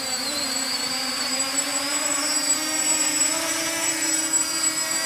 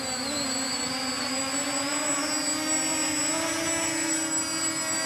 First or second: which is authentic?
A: second